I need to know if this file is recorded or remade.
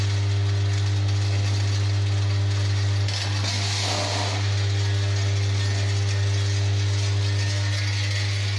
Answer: recorded